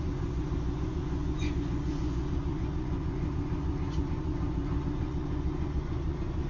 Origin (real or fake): fake